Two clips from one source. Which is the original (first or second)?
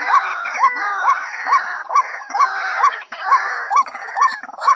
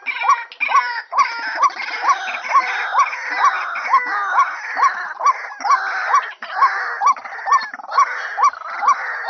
second